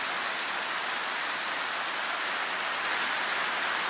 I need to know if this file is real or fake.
real